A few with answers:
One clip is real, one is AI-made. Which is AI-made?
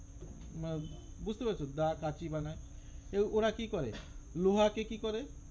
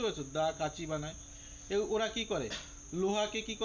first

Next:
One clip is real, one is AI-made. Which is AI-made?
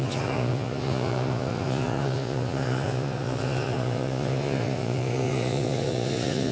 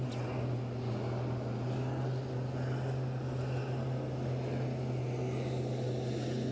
first